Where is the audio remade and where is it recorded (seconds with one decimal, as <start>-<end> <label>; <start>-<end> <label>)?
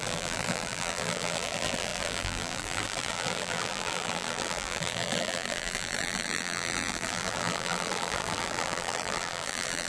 0.0-9.9 remade